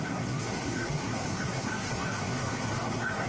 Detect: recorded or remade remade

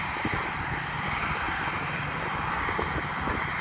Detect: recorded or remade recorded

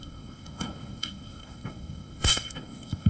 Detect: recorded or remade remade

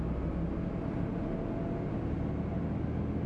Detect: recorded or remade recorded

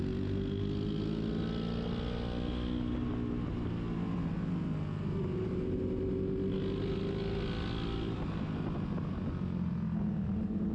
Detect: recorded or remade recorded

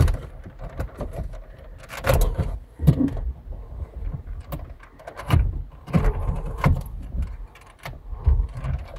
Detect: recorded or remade recorded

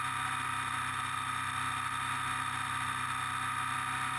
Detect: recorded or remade recorded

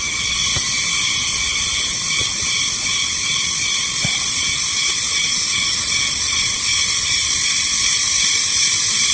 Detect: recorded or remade recorded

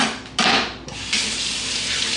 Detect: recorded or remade recorded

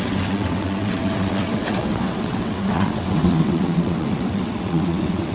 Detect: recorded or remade remade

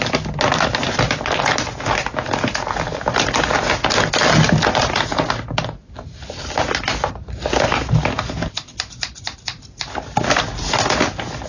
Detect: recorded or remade recorded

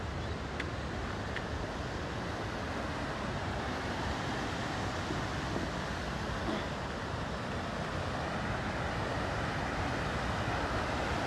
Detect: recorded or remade recorded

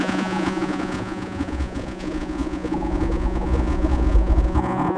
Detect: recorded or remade remade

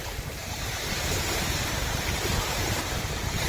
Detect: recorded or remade remade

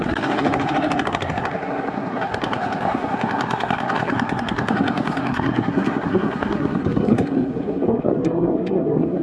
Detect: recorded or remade remade